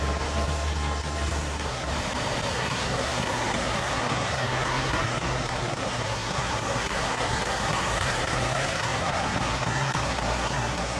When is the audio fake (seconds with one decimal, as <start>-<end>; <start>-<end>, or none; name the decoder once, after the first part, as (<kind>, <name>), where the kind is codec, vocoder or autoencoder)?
0.0-1.9 (codec, SNAC); 2.5-11.0

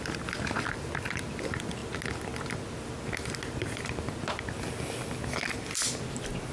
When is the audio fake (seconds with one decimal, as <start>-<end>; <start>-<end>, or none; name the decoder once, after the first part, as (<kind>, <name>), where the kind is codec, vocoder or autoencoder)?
none

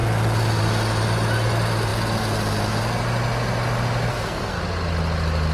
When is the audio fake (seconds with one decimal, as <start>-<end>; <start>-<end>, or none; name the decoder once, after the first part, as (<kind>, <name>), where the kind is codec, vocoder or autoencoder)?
4.1-4.6 (codec, SNAC)

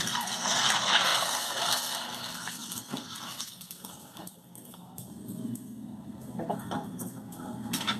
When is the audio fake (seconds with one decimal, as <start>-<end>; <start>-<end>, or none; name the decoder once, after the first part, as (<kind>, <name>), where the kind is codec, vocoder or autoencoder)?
0.0-8.0 (codec, SNAC)

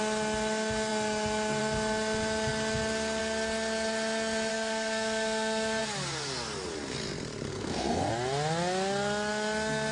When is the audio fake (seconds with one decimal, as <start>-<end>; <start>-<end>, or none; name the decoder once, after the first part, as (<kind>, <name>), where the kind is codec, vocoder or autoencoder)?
4.5-5.8 (codec, SNAC); 7.5-8.1

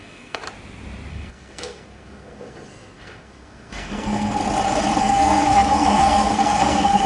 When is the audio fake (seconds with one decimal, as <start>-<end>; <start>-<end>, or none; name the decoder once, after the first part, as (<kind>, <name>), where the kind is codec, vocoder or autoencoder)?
0.0-0.4 (codec, SNAC); 1.1-4.4; 5.0-7.1